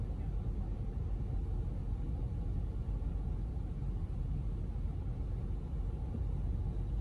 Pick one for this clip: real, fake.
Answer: real